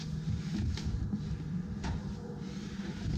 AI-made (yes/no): no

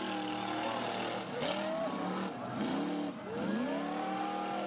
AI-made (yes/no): no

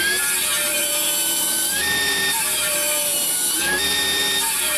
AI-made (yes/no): yes